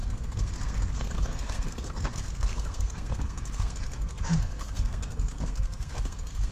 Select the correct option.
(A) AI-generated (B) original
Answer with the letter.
A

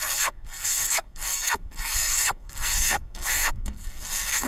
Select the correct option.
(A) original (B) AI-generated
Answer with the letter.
B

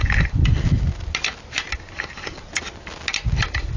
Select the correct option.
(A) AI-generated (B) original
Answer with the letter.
B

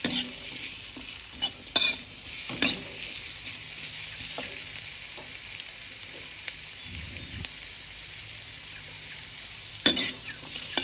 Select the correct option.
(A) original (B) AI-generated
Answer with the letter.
A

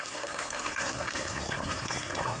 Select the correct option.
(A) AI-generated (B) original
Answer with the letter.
A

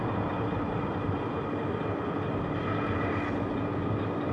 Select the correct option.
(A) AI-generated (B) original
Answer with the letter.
B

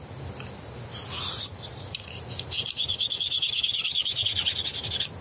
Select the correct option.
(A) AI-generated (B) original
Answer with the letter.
B